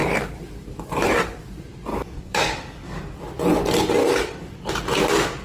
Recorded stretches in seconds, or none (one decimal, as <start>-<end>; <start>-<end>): 0.0-1.9; 3.0-4.0; 4.7-5.4